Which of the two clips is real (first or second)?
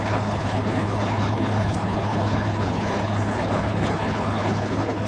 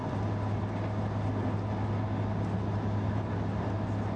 second